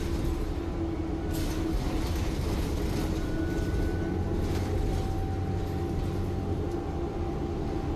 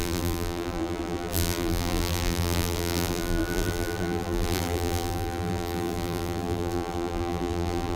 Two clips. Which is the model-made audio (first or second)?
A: second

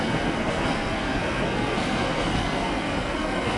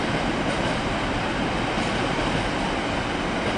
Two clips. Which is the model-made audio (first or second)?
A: first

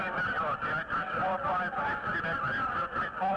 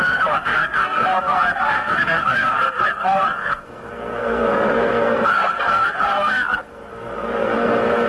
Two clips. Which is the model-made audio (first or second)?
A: second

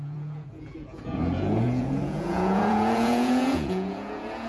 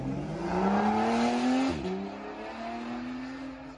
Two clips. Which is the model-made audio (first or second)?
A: first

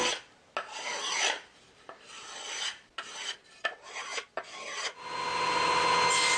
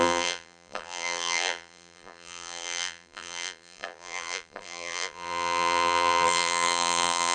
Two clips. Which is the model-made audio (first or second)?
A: second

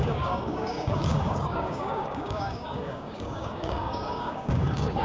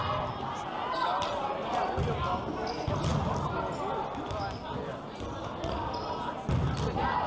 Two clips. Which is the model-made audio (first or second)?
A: first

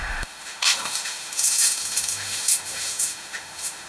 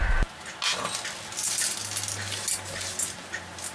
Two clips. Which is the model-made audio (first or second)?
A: first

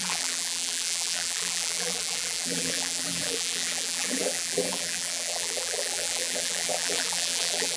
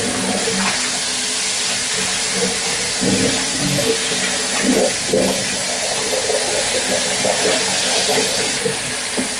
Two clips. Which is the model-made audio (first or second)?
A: first